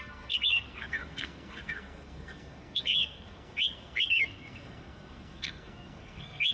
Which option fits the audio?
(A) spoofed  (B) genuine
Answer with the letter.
A